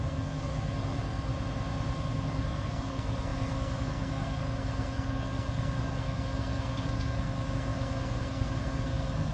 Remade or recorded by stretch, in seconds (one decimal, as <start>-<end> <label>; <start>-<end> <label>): 0.0-1.3 remade; 1.3-2.0 recorded; 2.0-9.3 remade